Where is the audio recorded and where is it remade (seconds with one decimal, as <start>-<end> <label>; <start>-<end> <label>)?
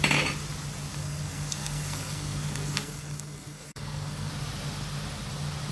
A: 0.0-0.9 recorded; 0.9-4.3 remade; 4.3-5.7 recorded